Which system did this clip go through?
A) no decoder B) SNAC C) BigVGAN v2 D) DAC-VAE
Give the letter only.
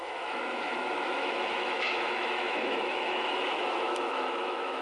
D